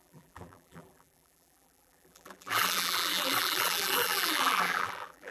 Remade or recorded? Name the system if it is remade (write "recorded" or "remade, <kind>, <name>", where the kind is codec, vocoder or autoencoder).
remade, vocoder, BigVGAN v2